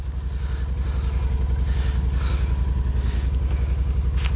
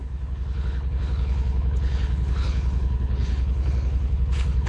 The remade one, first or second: second